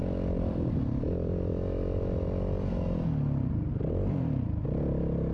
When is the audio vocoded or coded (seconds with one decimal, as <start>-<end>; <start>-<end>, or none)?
0.0-1.5; 3.5-5.3